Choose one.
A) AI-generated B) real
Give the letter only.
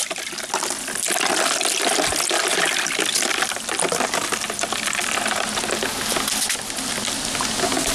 B